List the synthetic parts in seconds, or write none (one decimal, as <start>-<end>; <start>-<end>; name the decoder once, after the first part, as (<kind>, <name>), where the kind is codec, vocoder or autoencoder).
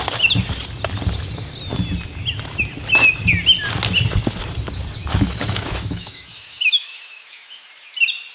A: 5.0-7.7 (autoencoder, DAC-VAE)